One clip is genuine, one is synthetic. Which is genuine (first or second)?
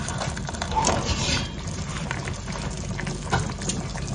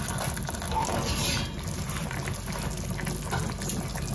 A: second